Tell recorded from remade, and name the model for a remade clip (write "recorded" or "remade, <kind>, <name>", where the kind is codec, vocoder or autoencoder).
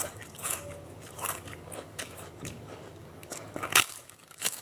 remade, codec, DAC